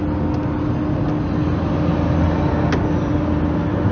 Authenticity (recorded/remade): recorded